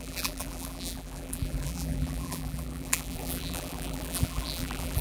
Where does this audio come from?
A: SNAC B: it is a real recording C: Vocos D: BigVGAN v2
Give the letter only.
D